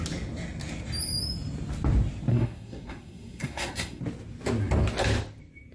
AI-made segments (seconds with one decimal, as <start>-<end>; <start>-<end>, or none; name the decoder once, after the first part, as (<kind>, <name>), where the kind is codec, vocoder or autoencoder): 2.3-4.0 (codec, SNAC)